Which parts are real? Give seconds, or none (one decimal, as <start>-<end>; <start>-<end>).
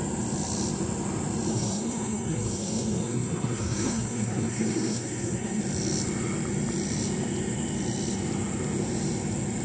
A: 0.0-1.5; 5.6-9.6